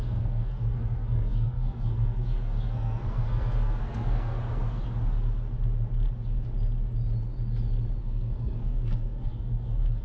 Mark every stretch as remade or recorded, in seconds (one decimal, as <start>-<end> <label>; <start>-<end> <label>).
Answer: 0.0-4.8 remade; 4.8-8.0 recorded; 8.0-10.0 remade